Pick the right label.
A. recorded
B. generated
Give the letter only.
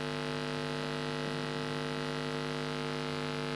A